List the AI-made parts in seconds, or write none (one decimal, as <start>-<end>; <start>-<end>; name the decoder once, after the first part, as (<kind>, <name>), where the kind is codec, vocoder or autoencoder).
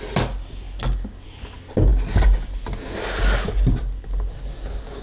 none